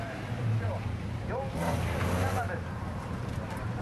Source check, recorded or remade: remade